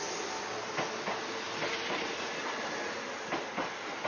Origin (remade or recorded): recorded